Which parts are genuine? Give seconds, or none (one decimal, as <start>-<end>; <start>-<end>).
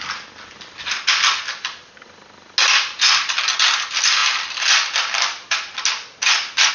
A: 0.0-6.7